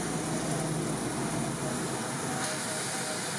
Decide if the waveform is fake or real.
real